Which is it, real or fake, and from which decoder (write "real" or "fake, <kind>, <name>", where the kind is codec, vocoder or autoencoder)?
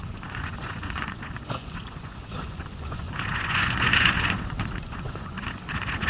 fake, vocoder, Vocos